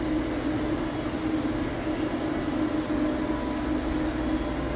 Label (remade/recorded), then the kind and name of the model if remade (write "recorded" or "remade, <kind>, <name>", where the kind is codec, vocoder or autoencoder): recorded